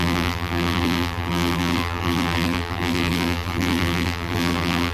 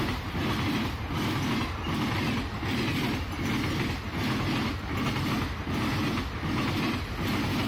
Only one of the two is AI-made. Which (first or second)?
first